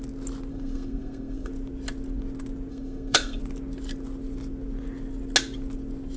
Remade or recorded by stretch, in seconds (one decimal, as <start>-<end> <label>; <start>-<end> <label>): 0.0-0.5 recorded; 0.5-1.5 remade; 1.5-2.7 recorded; 2.7-3.4 remade; 3.4-6.2 recorded